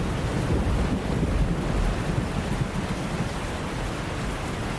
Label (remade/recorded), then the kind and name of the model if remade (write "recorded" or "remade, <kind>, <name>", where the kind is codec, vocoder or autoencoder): recorded